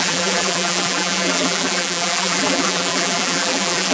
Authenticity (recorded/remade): remade